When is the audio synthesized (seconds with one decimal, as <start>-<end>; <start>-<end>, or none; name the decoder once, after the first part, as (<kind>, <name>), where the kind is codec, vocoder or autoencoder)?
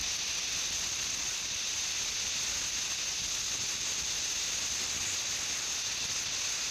none